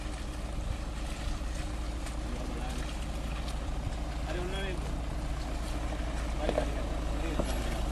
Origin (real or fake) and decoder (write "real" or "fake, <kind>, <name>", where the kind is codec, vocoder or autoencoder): real